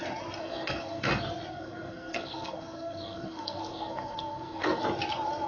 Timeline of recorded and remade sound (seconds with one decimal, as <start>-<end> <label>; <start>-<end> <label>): 0.0-0.4 recorded; 0.4-1.1 remade; 1.1-1.5 recorded; 1.5-4.8 remade; 4.8-5.5 recorded